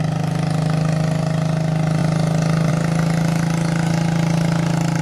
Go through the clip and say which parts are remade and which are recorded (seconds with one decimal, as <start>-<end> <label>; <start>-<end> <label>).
0.0-5.0 recorded